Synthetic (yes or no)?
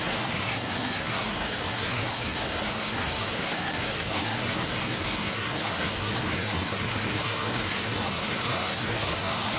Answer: yes